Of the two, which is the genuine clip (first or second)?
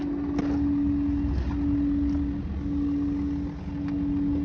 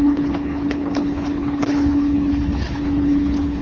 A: first